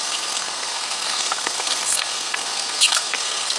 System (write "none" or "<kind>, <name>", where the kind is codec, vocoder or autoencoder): codec, SNAC